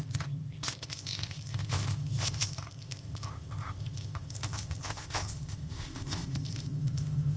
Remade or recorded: remade